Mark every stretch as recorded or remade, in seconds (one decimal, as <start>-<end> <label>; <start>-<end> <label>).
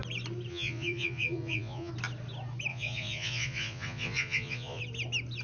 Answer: 0.0-0.5 recorded; 0.5-1.9 remade; 1.9-2.7 recorded; 2.7-4.8 remade; 4.8-5.4 recorded